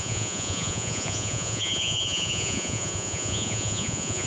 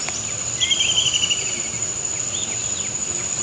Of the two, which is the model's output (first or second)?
first